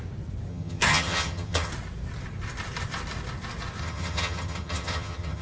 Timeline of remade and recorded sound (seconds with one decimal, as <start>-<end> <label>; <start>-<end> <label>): 0.0-0.5 recorded; 0.5-1.7 remade; 1.7-3.8 recorded; 3.8-5.4 remade